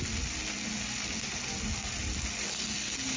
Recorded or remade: recorded